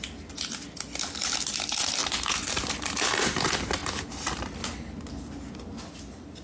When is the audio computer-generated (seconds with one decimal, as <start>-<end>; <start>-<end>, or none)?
2.0-3.4